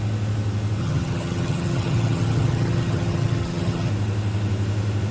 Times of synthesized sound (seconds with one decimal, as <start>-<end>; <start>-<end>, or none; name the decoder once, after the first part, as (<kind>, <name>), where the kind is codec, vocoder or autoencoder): 0.8-3.9 (vocoder, HiFi-GAN)